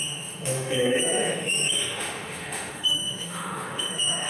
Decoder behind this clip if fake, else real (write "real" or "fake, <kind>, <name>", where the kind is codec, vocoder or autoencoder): fake, autoencoder, DAC-VAE